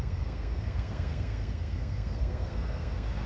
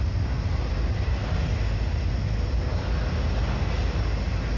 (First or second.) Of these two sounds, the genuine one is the second